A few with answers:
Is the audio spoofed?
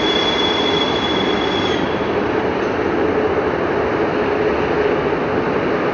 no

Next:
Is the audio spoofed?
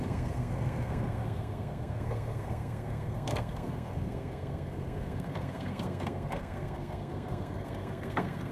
yes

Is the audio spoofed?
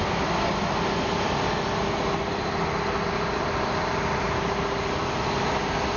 no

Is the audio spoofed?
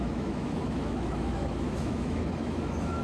yes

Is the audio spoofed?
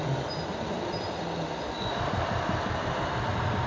no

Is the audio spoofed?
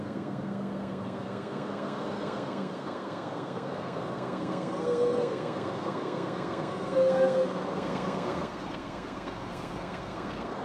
yes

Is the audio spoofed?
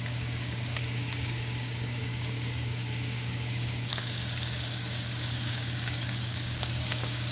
yes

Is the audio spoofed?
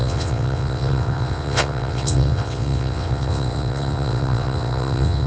yes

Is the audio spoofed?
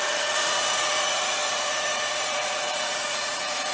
yes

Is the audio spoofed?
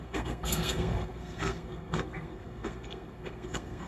yes